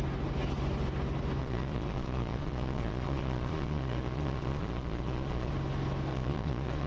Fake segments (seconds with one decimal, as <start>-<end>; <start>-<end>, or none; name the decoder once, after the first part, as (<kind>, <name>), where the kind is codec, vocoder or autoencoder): 1.4-5.5 (vocoder, Vocos); 6.1-6.9